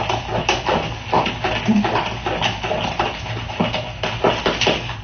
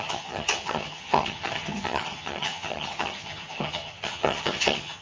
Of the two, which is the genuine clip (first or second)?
first